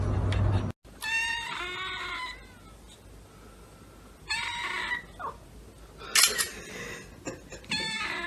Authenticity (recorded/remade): recorded